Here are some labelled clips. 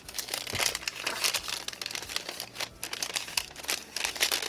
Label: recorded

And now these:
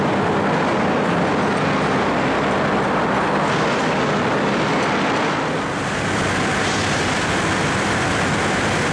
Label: recorded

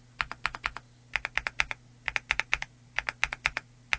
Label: recorded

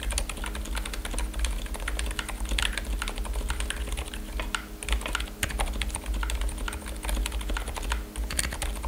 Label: recorded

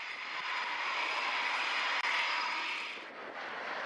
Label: recorded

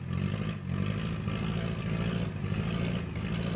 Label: recorded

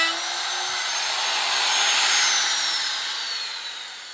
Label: recorded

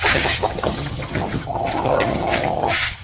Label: remade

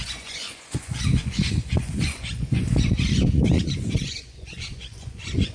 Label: remade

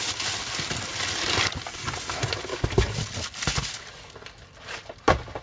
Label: recorded